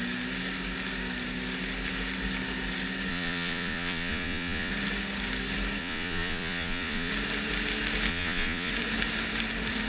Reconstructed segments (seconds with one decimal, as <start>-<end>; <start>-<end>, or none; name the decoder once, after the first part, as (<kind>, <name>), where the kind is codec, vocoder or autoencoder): 3.1-4.7 (vocoder, Vocos); 5.8-7.1; 8.1-8.7